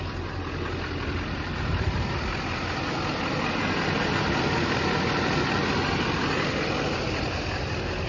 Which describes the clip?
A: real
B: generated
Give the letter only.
A